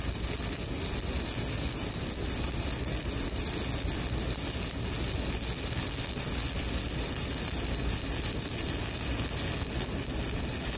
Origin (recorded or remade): recorded